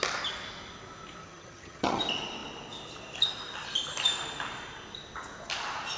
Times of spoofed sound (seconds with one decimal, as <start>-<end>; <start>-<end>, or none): 1.2-2.0